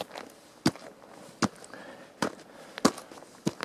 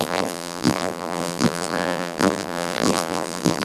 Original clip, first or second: first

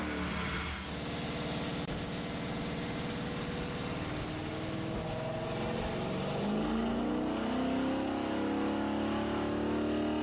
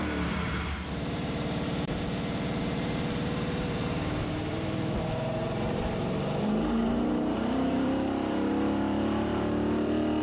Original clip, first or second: first